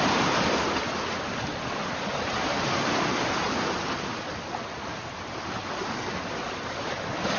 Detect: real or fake real